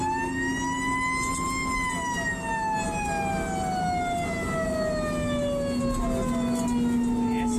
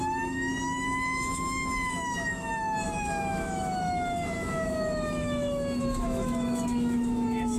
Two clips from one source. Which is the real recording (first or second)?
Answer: first